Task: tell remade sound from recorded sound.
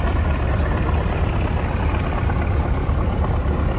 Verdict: recorded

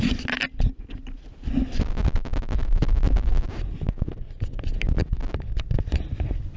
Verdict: recorded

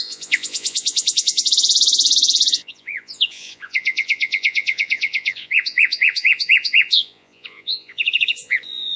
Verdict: remade